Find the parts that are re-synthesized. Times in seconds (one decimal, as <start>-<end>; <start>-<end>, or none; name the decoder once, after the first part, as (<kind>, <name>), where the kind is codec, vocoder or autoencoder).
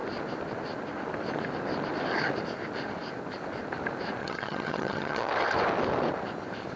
4.2-5.3 (vocoder, HiFi-GAN)